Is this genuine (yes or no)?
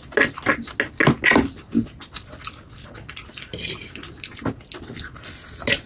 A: yes